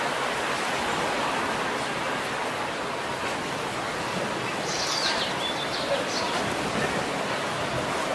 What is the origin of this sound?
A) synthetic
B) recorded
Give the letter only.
B